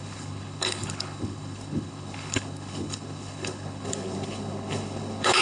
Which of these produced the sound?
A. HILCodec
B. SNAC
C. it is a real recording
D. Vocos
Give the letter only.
A